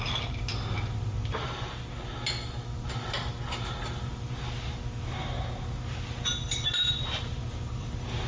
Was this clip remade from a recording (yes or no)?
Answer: no